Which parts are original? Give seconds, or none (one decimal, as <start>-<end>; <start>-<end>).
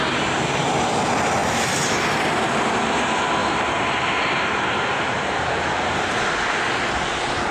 0.0-1.4; 2.5-3.4; 6.2-7.5